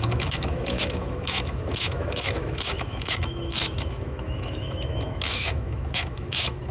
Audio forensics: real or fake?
fake